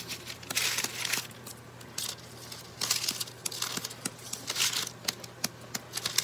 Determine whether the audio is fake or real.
real